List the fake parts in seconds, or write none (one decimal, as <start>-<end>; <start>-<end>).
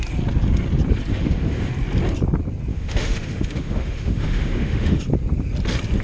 1.1-1.7; 2.7-5.0